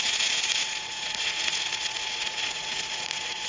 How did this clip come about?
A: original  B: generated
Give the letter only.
B